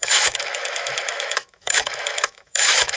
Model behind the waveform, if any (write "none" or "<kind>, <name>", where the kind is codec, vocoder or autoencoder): autoencoder, DAC-VAE